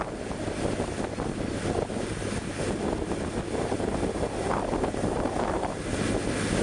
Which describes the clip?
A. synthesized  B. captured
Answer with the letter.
B